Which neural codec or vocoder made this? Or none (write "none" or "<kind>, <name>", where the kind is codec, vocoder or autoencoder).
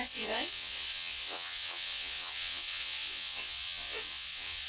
vocoder, WaveNeXt